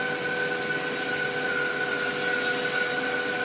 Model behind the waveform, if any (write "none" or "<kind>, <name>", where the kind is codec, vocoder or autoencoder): none